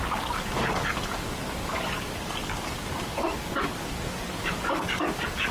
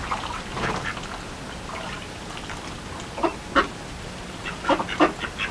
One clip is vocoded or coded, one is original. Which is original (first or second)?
second